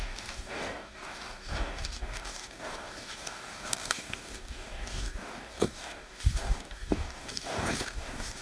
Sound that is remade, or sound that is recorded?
remade